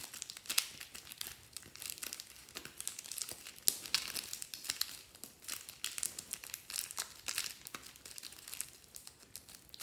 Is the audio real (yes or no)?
yes